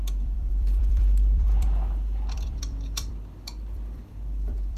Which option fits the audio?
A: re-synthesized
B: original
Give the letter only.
A